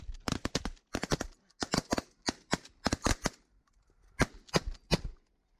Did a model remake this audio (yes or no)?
no